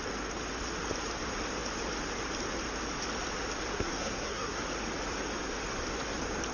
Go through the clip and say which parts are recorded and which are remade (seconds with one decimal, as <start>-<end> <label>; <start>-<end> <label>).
0.0-3.7 recorded; 3.7-4.6 remade; 4.6-6.5 recorded